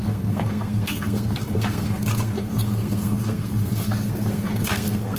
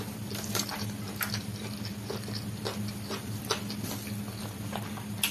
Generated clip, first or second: first